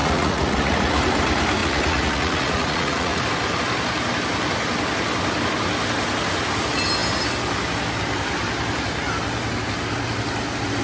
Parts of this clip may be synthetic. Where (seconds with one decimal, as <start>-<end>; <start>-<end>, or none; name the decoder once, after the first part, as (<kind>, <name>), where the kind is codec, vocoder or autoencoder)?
0.0-1.0 (vocoder, Vocos); 1.6-3.2